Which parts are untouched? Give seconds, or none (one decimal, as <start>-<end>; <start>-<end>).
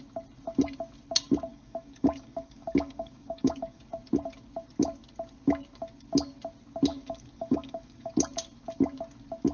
0.0-1.5; 3.8-6.9; 8.1-9.5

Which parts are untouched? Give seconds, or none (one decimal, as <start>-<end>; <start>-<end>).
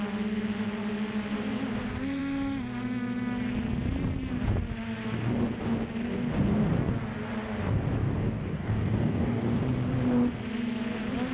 0.0-8.0; 9.6-11.3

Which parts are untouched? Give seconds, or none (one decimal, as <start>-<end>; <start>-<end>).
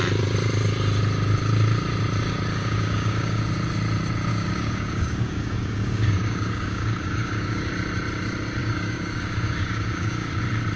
0.0-2.5; 3.4-4.3; 7.7-8.6; 10.4-10.8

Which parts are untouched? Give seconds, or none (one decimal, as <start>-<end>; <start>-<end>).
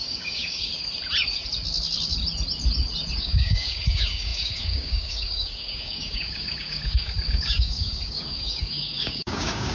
0.7-3.2